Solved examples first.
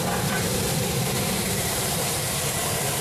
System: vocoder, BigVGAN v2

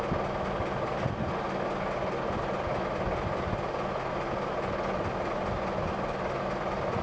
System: none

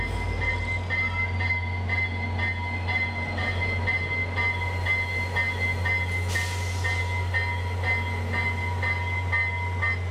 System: none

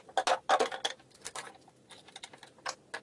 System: none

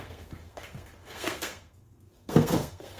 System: codec, SNAC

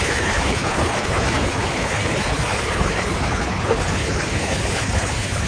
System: codec, HILCodec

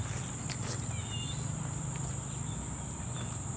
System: none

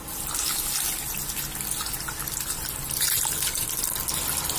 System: none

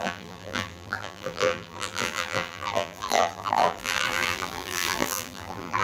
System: vocoder, BigVGAN v2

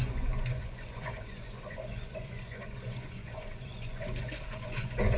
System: vocoder, Vocos